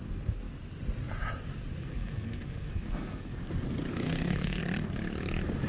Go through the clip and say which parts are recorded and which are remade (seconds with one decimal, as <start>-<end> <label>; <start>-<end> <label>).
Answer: 0.0-1.8 recorded; 1.8-3.3 remade; 3.3-3.9 recorded; 3.9-4.6 remade; 4.6-5.7 recorded